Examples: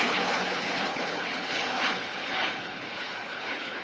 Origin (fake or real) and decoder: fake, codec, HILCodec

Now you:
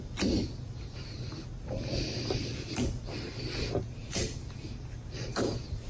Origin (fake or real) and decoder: real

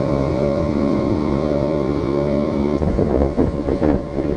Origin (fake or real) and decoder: fake, vocoder, Vocos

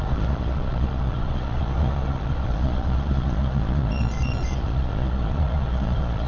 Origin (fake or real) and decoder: fake, vocoder, Vocos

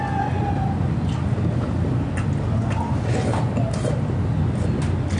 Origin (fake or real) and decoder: real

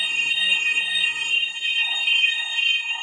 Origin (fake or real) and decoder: fake, codec, SNAC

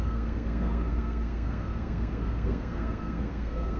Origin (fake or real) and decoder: fake, codec, SNAC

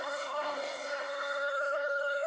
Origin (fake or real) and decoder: fake, codec, SNAC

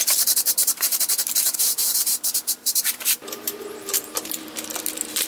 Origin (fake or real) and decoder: fake, vocoder, BigVGAN v2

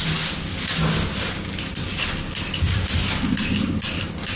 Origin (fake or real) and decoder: real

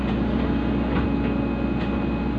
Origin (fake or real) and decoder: real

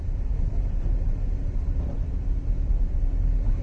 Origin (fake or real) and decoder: fake, vocoder, BigVGAN v2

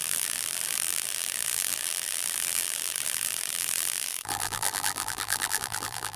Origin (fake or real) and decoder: fake, vocoder, BigVGAN v2